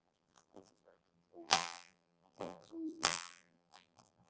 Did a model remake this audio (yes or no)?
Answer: yes